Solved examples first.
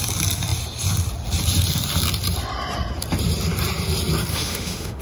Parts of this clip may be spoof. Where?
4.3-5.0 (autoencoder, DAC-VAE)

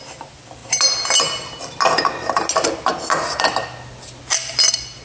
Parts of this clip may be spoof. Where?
none